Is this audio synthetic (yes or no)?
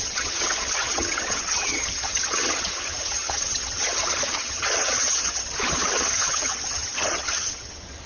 yes